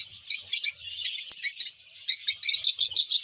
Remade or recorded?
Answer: recorded